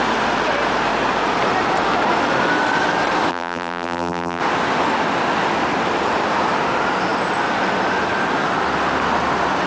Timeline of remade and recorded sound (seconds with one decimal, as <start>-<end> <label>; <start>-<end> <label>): 0.0-3.3 recorded; 3.3-4.4 remade; 4.4-9.7 recorded